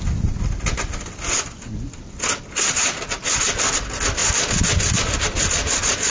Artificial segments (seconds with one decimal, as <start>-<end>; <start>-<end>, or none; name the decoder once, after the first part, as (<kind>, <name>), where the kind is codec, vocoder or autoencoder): none